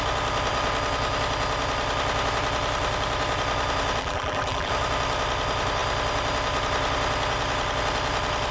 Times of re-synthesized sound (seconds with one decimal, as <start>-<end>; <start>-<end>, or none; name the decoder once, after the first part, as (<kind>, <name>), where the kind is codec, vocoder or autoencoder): 4.0-4.7 (vocoder, BigVGAN v2)